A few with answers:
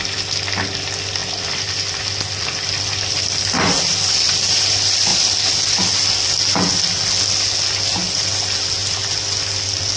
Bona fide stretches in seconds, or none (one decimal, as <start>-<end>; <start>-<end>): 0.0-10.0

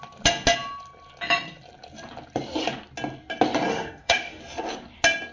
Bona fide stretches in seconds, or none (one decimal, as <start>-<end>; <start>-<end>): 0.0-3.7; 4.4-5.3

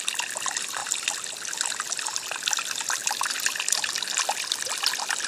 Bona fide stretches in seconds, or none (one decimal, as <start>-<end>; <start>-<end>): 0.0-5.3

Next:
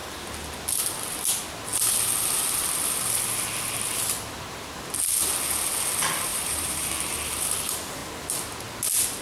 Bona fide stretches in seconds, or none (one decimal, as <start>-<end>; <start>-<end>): 0.0-6.3; 6.9-9.2

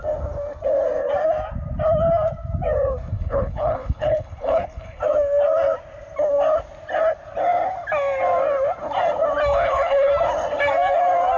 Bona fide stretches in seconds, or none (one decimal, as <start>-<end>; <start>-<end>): 0.0-3.1; 5.0-9.5; 10.1-11.4

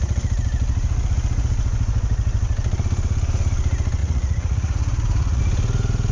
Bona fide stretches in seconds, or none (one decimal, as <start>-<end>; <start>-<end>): 0.0-4.0; 5.4-6.1